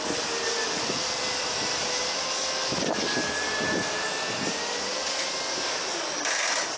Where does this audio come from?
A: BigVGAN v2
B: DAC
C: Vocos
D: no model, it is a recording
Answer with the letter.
D